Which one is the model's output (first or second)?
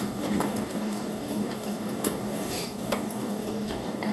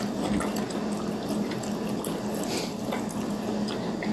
first